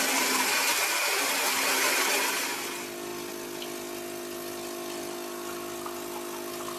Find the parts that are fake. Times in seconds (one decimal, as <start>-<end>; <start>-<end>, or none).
none